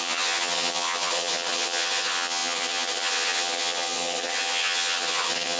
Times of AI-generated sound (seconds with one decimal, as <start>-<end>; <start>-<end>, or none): 0.0-5.6